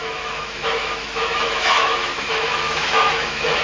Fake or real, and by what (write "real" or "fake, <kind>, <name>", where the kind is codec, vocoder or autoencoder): fake, autoencoder, DAC-VAE